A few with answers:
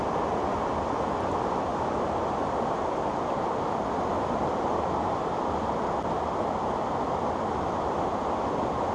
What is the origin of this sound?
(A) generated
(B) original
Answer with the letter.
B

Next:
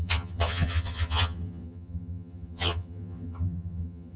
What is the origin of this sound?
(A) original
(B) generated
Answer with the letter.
B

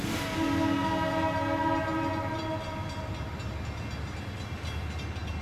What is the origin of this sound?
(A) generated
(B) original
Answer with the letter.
B